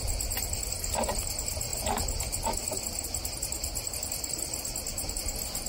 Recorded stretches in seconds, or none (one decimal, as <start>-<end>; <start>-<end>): 0.0-5.7